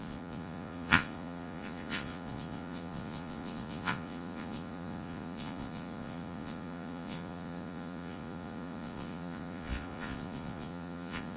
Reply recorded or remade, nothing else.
remade